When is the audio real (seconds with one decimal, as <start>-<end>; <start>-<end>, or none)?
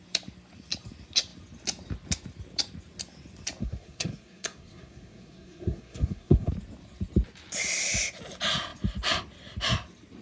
0.0-3.6; 6.5-10.2